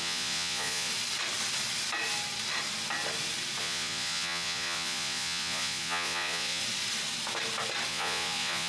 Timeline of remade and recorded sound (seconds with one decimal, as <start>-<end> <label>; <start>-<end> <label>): 0.0-0.9 remade; 0.9-3.6 recorded; 3.6-6.6 remade; 6.6-7.9 recorded; 7.9-8.7 remade